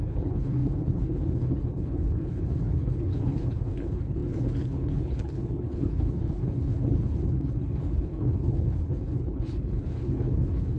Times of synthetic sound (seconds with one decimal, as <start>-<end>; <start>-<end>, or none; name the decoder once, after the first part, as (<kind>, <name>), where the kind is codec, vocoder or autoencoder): 0.0-10.8 (codec, HILCodec)